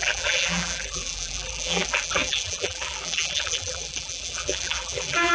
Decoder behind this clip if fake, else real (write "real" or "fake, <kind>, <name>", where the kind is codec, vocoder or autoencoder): fake, vocoder, BigVGAN v2